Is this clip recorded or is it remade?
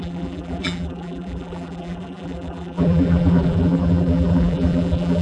remade